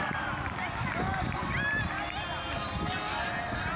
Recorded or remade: recorded